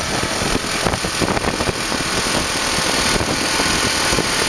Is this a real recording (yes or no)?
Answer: no